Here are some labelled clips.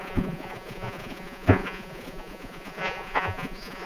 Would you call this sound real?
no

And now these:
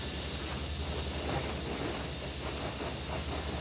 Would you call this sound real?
yes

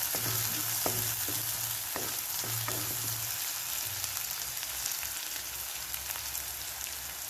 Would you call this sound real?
yes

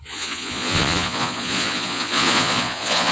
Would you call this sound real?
no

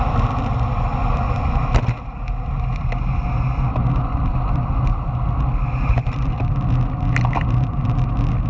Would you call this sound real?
yes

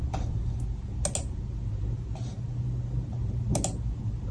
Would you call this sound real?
yes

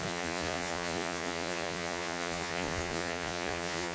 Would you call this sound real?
no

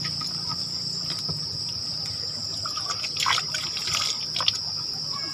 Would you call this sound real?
yes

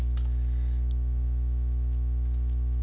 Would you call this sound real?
yes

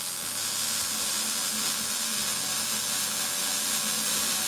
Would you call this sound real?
yes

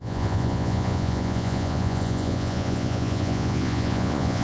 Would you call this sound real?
no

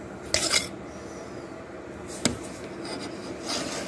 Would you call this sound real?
yes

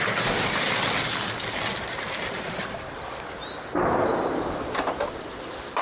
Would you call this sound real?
yes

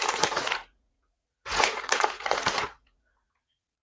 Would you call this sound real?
no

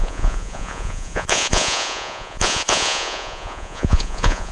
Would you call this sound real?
no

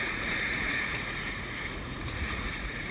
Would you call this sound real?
no